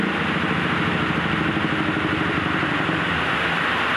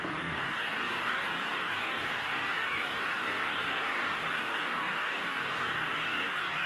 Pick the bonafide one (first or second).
first